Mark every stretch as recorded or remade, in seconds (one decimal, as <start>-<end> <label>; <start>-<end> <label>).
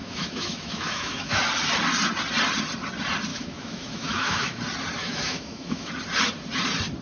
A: 0.0-1.4 remade; 1.4-3.3 recorded; 3.3-4.6 remade; 4.6-5.0 recorded; 5.0-5.9 remade; 5.9-7.0 recorded